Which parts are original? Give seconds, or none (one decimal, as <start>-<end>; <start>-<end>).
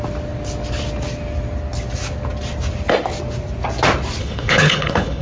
0.0-4.2